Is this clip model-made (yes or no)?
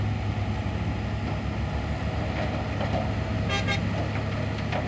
no